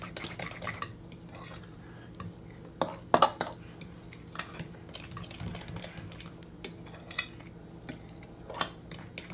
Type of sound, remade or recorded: recorded